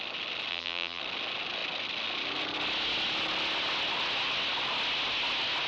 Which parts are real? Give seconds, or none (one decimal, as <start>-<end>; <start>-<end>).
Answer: 0.0-0.5; 1.0-5.7